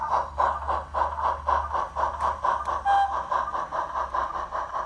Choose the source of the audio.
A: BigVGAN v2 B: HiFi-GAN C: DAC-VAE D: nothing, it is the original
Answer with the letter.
D